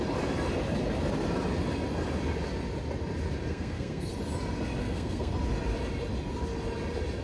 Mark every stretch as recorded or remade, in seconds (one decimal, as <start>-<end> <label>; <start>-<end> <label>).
0.0-3.5 recorded; 3.5-4.1 remade; 4.1-4.8 recorded; 4.8-5.3 remade; 5.3-7.2 recorded